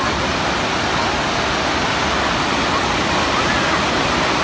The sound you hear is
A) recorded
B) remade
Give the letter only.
A